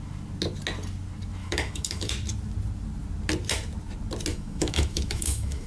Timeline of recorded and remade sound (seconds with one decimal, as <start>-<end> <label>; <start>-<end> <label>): 0.0-1.4 recorded; 1.4-2.1 remade; 2.1-4.3 recorded; 4.3-5.7 remade